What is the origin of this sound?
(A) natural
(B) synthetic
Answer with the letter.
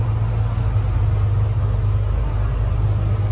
A